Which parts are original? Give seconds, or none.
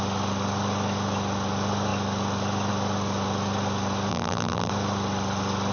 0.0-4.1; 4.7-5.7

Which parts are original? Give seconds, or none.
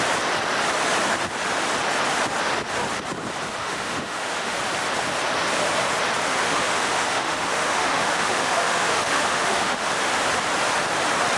0.0-3.6; 4.6-6.3; 9.9-11.4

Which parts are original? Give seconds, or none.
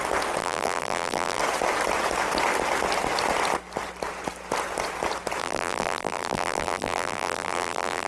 0.0-0.4; 1.4-5.4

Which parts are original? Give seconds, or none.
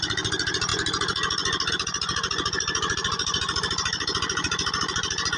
0.0-5.4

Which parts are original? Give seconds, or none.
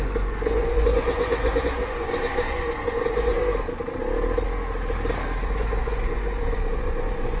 3.4-5.4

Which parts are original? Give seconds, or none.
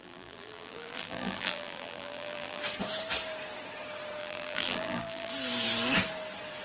2.6-4.2; 5.3-6.6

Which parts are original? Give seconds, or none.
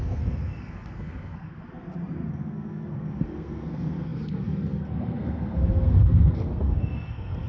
1.6-2.3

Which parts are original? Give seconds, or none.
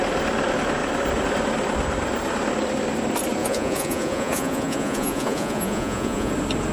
0.0-3.4; 6.3-6.7